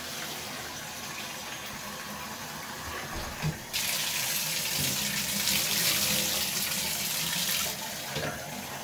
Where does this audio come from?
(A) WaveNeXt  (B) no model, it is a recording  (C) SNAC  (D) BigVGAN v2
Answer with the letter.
B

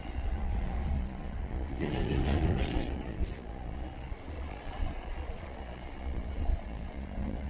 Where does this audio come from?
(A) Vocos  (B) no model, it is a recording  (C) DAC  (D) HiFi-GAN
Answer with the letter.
A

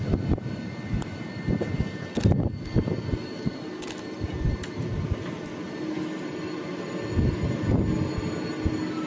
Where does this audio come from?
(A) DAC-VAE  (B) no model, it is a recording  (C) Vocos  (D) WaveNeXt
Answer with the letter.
B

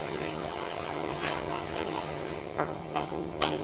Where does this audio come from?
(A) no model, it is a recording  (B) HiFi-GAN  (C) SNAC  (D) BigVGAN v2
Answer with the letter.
B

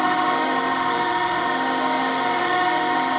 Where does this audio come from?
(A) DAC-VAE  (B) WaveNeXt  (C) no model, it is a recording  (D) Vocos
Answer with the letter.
A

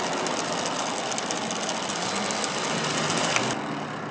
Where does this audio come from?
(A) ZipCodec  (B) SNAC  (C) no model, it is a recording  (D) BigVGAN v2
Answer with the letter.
C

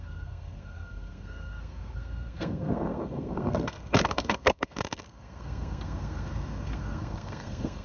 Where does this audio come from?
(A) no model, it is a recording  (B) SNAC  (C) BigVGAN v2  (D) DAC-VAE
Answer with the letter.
B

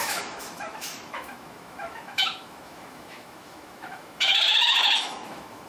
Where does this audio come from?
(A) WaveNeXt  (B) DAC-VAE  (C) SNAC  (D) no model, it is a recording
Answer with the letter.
B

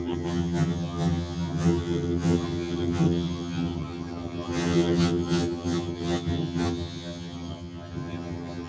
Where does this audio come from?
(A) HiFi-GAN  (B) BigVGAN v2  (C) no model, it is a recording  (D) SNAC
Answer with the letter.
A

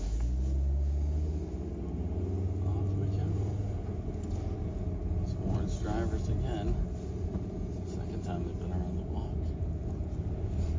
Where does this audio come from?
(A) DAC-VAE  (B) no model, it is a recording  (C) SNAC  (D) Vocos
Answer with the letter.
B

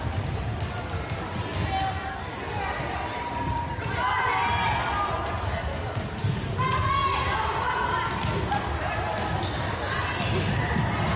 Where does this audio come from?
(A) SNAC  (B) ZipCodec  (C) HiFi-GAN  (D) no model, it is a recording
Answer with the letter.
D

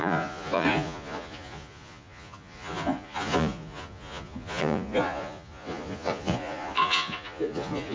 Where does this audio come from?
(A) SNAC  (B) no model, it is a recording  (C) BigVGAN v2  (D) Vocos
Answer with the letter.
D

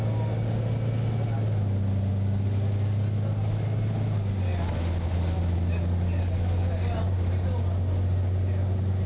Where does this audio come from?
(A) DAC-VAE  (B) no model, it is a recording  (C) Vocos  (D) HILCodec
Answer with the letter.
B